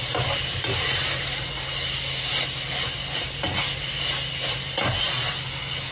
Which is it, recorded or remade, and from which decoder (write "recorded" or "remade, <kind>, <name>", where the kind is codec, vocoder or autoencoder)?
recorded